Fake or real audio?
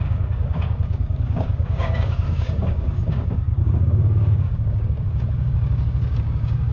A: fake